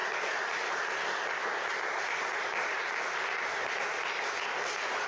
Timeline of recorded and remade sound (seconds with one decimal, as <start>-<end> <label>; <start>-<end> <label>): 0.0-5.1 recorded